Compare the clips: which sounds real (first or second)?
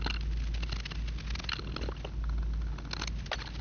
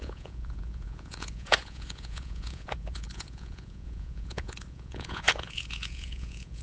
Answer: first